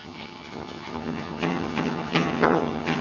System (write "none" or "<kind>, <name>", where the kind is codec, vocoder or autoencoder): vocoder, HiFi-GAN